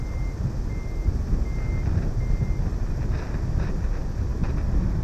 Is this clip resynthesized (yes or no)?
no